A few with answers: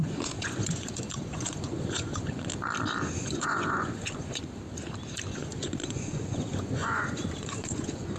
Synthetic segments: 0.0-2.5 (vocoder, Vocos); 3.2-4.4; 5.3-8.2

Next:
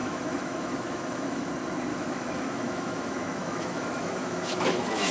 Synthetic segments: 0.0-1.5 (autoencoder, DAC-VAE); 1.9-5.1

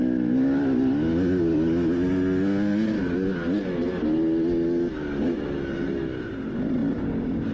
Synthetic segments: 6.8-7.5 (vocoder, BigVGAN v2)

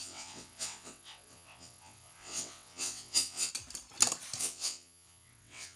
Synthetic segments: 0.0-3.5 (vocoder, WaveNeXt); 4.4-5.8

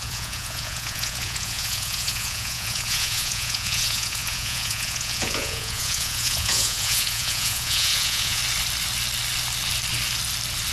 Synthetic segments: 0.0-8.4 (vocoder, Vocos)

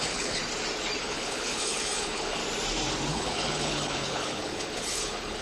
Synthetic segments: 0.0-0.4 (codec, HILCodec); 1.0-2.4; 3.1-5.4

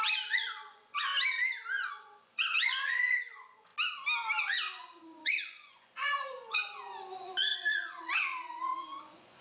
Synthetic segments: 0.0-1.1 (vocoder, Vocos); 1.9-3.7; 4.4-9.4

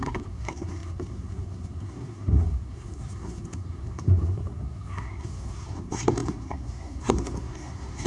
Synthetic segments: 0.0-8.1 (codec, SNAC)